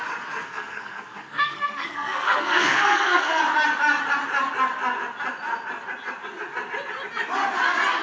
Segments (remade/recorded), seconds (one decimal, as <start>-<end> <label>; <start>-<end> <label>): 0.0-0.4 recorded; 0.4-3.4 remade; 3.4-8.0 recorded